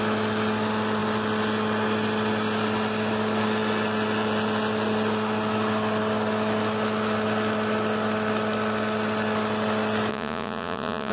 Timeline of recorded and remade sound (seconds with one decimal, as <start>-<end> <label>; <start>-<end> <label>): 0.0-10.1 recorded; 10.1-11.1 remade